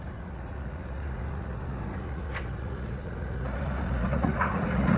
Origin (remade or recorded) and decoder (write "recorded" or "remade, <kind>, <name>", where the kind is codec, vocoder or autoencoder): remade, vocoder, Vocos